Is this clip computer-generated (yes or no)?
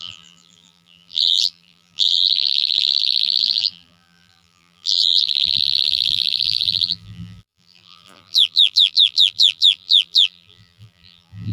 yes